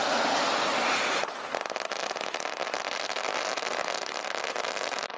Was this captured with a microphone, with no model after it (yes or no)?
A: yes